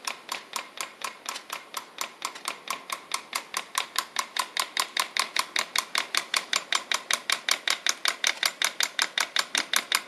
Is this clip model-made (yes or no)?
no